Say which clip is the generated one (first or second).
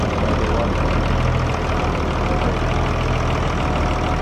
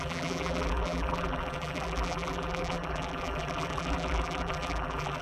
second